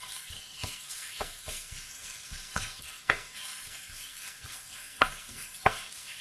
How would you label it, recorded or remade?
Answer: remade